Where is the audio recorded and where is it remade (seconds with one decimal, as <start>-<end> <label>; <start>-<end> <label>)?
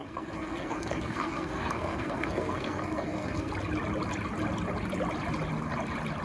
0.0-3.5 remade; 3.5-6.2 recorded